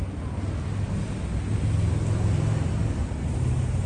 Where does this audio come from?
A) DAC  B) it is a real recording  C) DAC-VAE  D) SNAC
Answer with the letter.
B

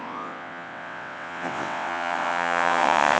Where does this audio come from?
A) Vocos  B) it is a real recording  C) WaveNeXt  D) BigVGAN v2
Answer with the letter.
C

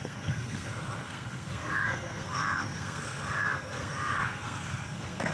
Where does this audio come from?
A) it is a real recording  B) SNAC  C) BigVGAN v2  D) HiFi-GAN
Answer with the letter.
B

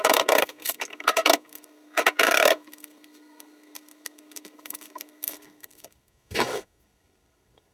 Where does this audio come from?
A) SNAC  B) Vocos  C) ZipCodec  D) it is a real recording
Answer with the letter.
A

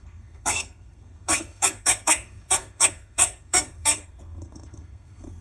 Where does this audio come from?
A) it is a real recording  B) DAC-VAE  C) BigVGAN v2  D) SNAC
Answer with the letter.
D